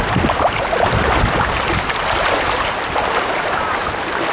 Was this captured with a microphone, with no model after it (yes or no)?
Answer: yes